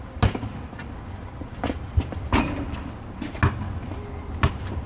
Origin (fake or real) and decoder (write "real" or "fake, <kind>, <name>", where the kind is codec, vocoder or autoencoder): real